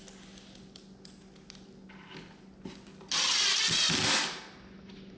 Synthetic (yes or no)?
no